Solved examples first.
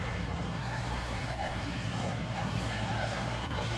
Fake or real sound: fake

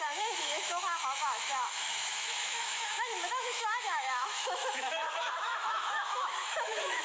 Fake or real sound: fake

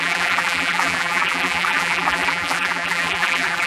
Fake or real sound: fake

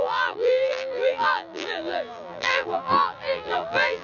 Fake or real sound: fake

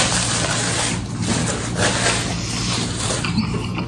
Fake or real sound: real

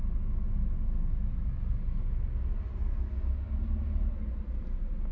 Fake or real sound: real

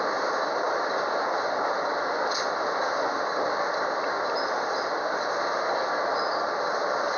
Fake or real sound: real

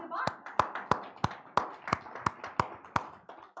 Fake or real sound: real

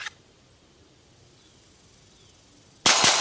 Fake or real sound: real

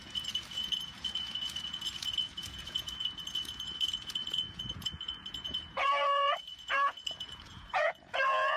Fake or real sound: fake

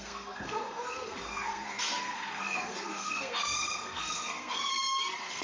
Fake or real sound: fake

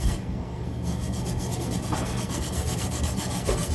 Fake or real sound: fake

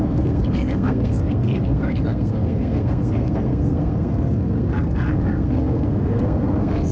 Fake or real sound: fake